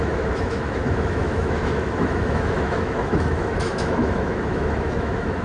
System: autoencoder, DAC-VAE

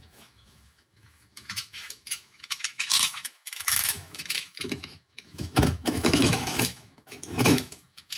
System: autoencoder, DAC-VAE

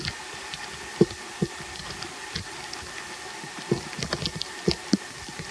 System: none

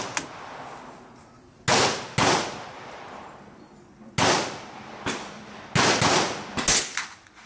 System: none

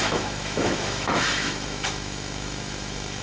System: autoencoder, DAC-VAE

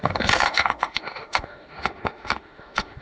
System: autoencoder, DAC-VAE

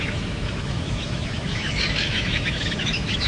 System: autoencoder, DAC-VAE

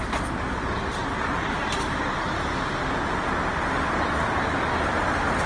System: none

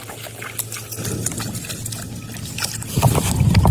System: none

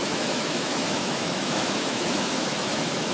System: autoencoder, DAC-VAE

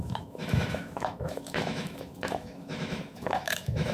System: autoencoder, DAC-VAE